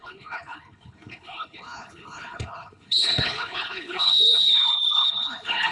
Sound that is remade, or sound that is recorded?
remade